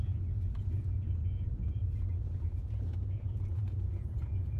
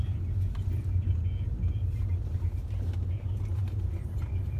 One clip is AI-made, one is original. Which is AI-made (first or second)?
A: first